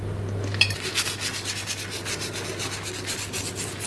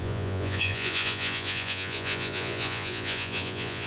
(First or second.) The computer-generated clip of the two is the second